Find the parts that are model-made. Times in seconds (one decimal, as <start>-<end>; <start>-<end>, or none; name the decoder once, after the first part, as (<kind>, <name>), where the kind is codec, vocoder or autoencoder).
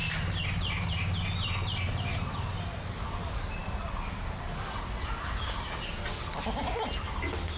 none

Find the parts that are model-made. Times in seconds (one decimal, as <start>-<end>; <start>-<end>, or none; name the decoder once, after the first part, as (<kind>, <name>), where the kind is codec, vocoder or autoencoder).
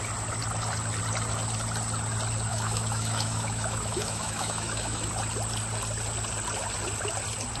2.5-5.1 (autoencoder, DAC-VAE)